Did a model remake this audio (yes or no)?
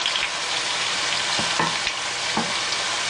no